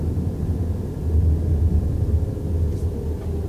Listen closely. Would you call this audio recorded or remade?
recorded